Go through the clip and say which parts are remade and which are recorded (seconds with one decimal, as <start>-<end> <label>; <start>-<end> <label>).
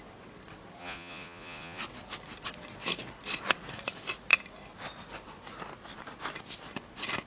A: 0.0-0.8 recorded; 0.8-1.8 remade; 1.8-7.3 recorded